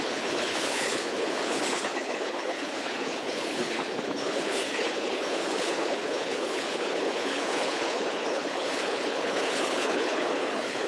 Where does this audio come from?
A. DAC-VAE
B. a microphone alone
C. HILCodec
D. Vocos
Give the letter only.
C